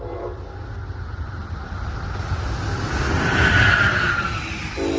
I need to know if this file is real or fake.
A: real